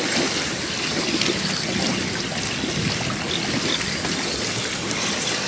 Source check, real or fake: real